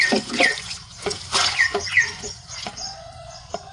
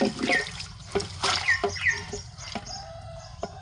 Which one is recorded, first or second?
second